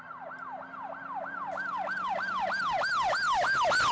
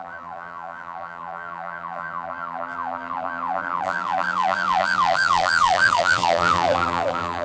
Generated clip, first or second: second